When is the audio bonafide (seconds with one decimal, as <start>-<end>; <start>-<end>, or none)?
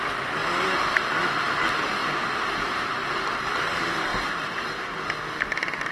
0.0-0.4; 1.4-2.0; 2.8-4.1; 4.7-5.9